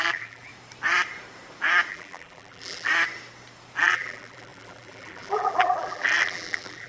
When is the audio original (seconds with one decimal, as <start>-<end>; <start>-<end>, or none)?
0.5-1.9; 2.9-3.8